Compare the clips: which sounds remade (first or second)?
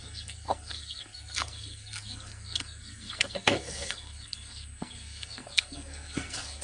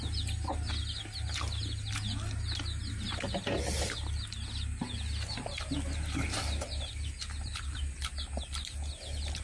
first